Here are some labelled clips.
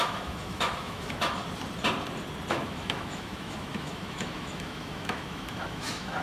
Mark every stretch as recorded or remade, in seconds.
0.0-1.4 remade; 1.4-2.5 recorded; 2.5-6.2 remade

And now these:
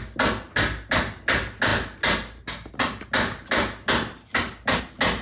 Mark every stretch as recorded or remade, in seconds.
0.0-5.2 recorded

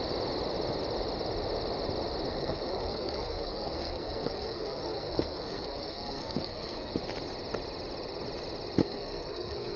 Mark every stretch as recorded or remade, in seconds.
0.0-2.3 recorded; 2.3-6.9 remade; 6.9-8.8 recorded; 8.8-9.8 remade